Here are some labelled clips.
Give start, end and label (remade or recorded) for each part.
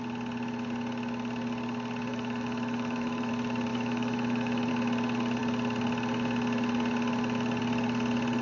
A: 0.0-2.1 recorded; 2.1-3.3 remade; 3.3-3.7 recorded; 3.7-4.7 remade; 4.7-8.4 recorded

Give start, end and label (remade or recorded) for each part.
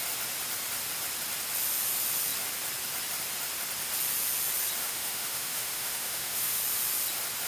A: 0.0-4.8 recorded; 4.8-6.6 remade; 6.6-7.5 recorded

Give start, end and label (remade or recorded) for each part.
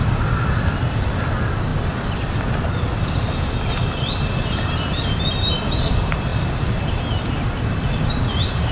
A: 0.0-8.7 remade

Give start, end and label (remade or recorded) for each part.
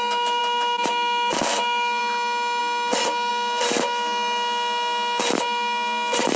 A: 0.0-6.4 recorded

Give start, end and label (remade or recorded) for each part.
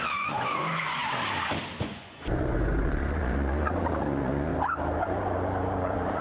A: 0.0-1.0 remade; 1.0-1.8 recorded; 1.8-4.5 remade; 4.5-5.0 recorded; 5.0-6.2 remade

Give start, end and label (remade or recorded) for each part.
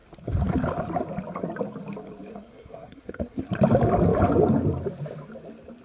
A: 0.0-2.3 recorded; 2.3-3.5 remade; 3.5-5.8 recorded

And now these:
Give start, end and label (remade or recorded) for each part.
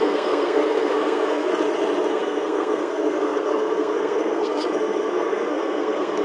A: 0.0-1.5 remade; 1.5-2.1 recorded; 2.1-6.2 remade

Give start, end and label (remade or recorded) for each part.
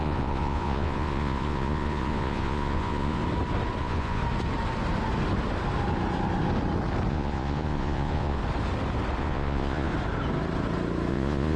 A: 0.0-3.2 remade; 3.2-3.8 recorded; 3.8-4.2 remade; 4.2-7.1 recorded; 7.1-8.4 remade; 8.4-9.2 recorded; 9.2-9.9 remade; 9.9-11.1 recorded; 11.1-11.6 remade